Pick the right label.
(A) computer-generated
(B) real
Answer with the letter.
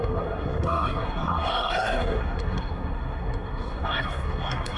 A